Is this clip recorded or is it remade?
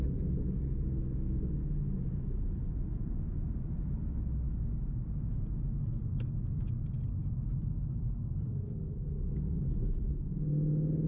recorded